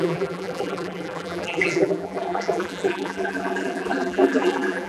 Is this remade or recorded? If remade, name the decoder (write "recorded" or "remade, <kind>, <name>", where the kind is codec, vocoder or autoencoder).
remade, vocoder, BigVGAN v2